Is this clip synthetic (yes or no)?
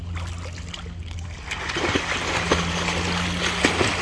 no